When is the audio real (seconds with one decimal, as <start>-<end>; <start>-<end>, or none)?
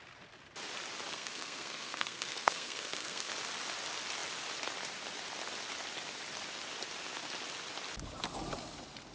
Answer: 0.0-1.1; 3.3-9.1